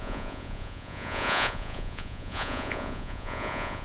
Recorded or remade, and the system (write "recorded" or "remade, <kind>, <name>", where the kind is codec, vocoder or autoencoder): remade, vocoder, Vocos